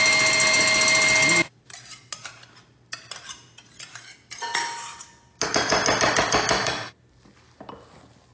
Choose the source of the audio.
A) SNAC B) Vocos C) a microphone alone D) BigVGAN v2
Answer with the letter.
C